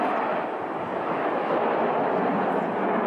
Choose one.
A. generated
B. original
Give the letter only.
B